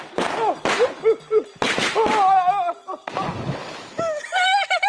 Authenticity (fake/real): real